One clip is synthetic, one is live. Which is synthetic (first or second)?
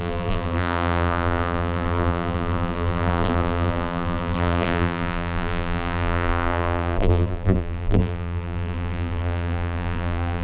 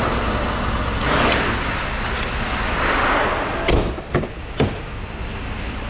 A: first